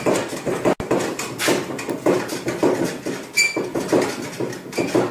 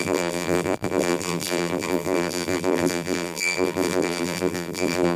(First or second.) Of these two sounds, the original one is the first